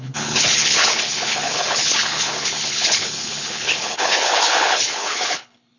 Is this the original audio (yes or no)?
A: no